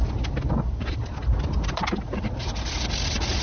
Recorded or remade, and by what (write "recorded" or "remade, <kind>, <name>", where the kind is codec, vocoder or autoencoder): recorded